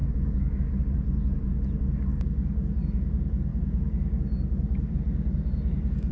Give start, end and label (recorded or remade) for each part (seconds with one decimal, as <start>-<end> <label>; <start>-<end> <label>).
0.0-6.1 recorded